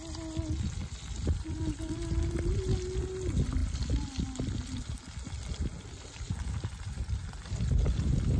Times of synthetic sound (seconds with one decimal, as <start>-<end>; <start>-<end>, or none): none